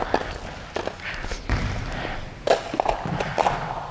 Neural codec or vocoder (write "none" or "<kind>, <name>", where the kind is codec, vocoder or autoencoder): none